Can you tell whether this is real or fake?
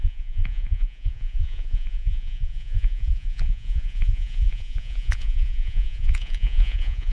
fake